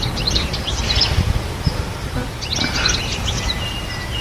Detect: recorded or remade recorded